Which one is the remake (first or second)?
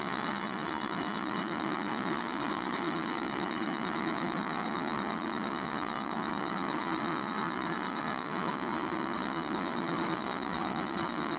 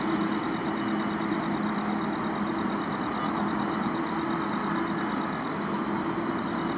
first